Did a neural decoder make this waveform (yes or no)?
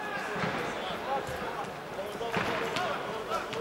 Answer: no